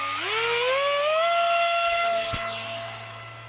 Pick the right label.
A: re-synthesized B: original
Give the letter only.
B